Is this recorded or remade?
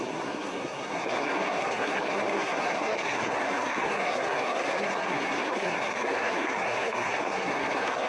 remade